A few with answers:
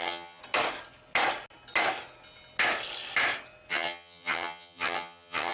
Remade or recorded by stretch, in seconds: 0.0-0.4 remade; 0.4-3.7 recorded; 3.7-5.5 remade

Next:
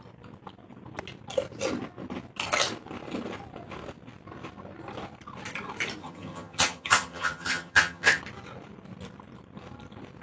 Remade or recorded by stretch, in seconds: 0.0-6.0 recorded; 6.0-8.2 remade; 8.2-10.2 recorded

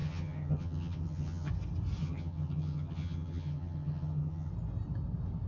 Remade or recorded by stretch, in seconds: 0.0-1.5 remade; 1.5-2.0 recorded; 2.0-4.5 remade; 4.5-5.5 recorded

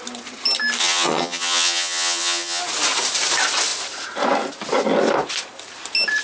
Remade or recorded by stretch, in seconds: 0.0-0.8 recorded; 0.8-2.6 remade; 2.6-6.2 recorded

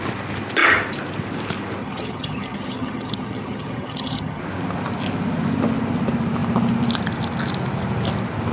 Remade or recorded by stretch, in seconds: 0.0-1.8 recorded; 1.8-4.4 remade; 4.4-8.5 recorded

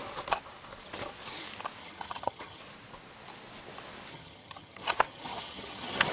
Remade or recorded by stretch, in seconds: 0.0-1.8 recorded; 1.8-2.6 remade; 2.6-4.1 recorded; 4.1-6.1 remade

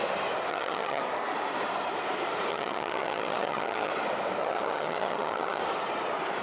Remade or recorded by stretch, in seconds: 0.0-0.5 recorded; 0.5-1.0 remade; 1.0-2.5 recorded; 2.5-3.9 remade; 3.9-4.4 recorded; 4.4-5.6 remade; 5.6-6.4 recorded

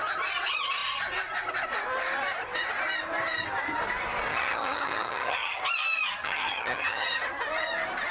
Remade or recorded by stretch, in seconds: 0.0-4.3 recorded; 4.3-5.6 remade; 5.6-6.2 recorded; 6.2-7.2 remade; 7.2-8.1 recorded